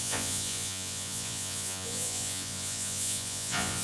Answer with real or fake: fake